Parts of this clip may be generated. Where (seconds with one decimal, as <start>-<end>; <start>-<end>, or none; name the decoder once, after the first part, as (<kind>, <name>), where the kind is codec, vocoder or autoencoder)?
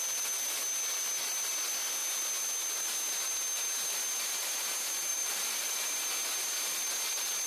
5.1-5.8 (vocoder, BigVGAN v2)